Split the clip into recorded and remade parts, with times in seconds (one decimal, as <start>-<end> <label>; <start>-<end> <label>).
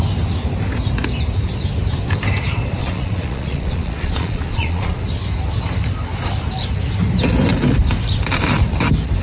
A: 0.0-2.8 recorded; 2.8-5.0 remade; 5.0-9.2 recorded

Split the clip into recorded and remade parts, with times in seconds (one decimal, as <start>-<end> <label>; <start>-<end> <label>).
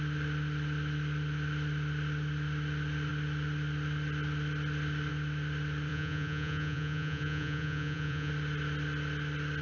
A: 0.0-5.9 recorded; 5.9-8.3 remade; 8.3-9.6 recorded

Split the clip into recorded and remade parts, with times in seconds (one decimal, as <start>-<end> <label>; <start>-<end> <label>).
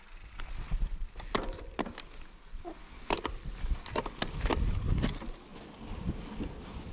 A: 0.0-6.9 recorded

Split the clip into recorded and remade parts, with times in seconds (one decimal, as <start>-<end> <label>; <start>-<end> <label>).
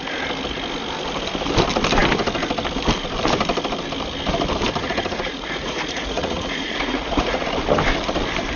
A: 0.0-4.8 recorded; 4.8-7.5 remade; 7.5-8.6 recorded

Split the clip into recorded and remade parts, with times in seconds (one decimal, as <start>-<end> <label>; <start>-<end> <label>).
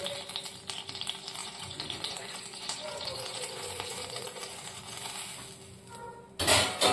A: 0.0-1.4 recorded; 1.4-5.1 remade; 5.1-6.9 recorded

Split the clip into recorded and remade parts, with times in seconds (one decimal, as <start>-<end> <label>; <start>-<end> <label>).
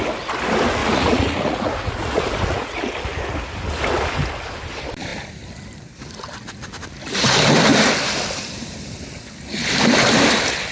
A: 0.0-0.8 recorded; 0.8-2.9 remade; 2.9-10.7 recorded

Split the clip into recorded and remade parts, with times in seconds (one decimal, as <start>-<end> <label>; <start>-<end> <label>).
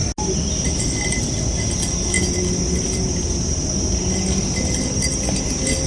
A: 0.0-5.9 recorded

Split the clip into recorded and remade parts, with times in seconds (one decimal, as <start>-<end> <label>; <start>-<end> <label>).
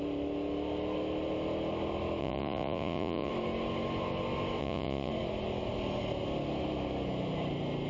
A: 0.0-2.2 recorded; 2.2-3.3 remade; 3.3-4.6 recorded; 4.6-5.1 remade; 5.1-7.9 recorded